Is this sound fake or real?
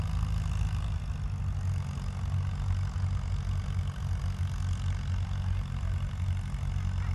real